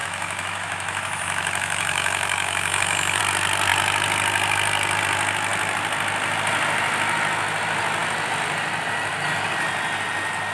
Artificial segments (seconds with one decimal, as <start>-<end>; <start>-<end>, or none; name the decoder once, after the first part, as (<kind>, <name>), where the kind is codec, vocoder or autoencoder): 0.0-3.2 (autoencoder, DAC-VAE)